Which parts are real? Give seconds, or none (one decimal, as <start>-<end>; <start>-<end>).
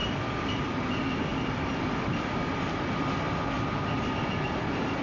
0.0-5.0